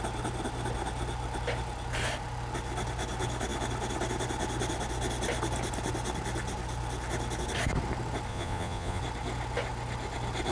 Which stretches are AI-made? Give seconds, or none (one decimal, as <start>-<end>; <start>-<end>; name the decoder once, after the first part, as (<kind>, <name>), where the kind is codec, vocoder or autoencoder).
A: 8.3-9.0 (vocoder, Vocos)